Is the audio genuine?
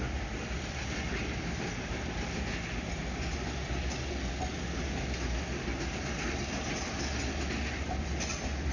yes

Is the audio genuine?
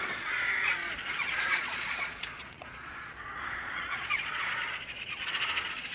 no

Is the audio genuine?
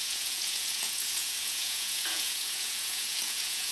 no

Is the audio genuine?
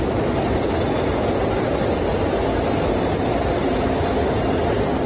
yes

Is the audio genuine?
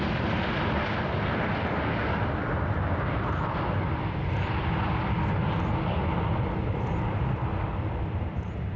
yes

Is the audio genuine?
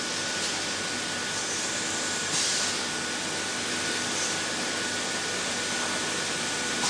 yes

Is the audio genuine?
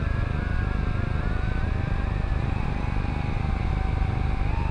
yes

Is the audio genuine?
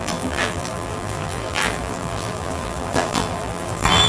no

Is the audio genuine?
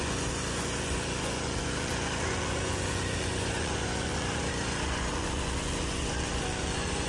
no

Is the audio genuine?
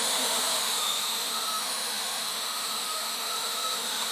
no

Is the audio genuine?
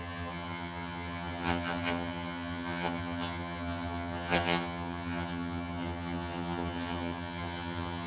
no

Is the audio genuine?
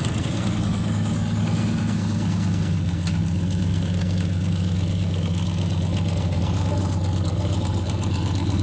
no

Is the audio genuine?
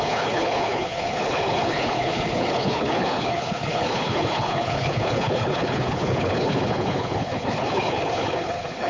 no